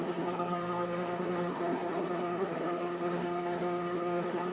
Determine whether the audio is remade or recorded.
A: remade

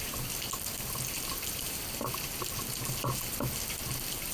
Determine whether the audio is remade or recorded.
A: recorded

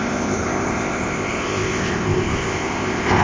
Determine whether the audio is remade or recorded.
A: remade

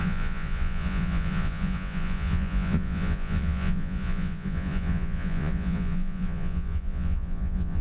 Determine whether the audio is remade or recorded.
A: remade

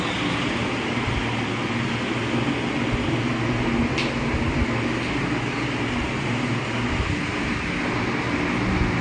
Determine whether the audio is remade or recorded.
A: recorded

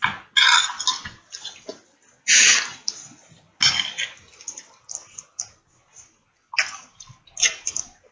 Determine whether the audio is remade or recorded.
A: recorded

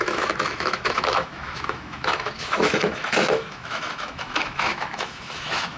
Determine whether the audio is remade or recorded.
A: remade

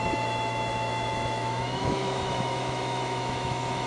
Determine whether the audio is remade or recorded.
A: remade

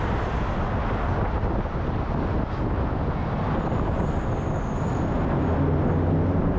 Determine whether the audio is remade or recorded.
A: recorded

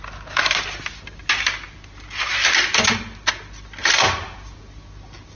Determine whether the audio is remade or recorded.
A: recorded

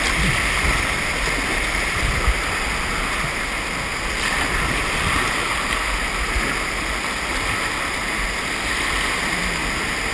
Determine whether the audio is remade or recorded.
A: recorded